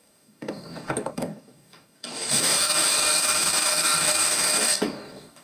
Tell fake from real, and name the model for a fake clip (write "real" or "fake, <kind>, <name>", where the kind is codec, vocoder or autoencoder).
fake, codec, DAC